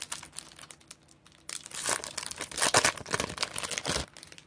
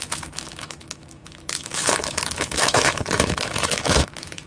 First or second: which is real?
first